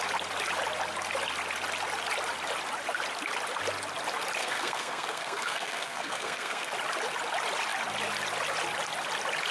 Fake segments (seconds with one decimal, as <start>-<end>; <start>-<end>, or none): 4.4-6.7